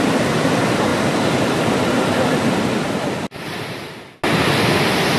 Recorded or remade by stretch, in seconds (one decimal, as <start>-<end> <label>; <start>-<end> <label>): 0.0-5.2 recorded